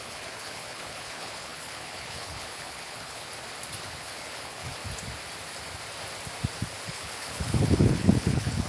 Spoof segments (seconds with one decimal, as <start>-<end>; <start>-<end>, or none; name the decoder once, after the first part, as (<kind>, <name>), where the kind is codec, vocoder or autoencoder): 0.0-3.3 (codec, HILCodec); 3.8-4.8; 6.8-8.7